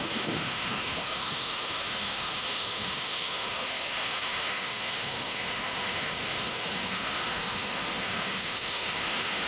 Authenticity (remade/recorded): remade